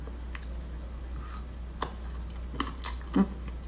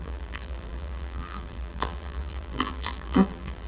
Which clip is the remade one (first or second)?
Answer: second